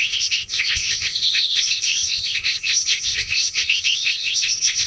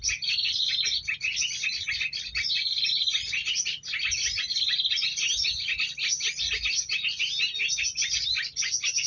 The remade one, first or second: first